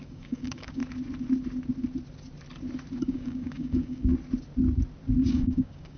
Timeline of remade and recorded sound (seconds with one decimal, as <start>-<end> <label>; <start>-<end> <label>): 0.0-0.8 remade; 0.8-3.0 recorded; 3.0-4.1 remade; 4.1-5.3 recorded; 5.3-6.0 remade